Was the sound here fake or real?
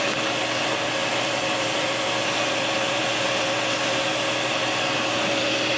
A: real